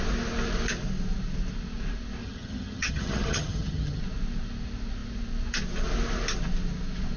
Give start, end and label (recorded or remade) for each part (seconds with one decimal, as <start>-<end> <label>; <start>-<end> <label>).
0.0-2.2 recorded; 2.2-4.0 remade; 4.0-7.2 recorded